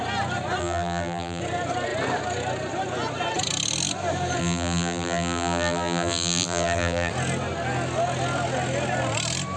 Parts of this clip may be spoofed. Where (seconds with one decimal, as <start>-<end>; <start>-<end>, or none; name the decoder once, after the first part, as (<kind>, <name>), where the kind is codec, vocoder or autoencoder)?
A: 0.6-1.4 (vocoder, BigVGAN v2); 4.4-7.1